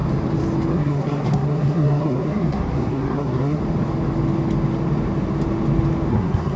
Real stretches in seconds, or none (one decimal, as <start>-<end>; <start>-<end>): 0.0-0.7; 3.6-6.1